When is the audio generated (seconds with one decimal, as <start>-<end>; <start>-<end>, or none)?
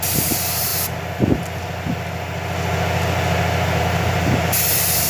0.0-0.7; 3.8-5.1